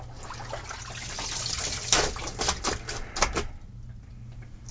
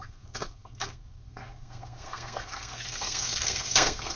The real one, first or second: first